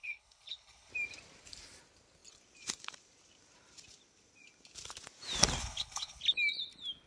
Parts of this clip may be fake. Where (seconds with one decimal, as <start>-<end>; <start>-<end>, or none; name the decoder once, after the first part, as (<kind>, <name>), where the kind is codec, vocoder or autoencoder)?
0.0-0.9 (codec, HILCodec); 5.6-6.2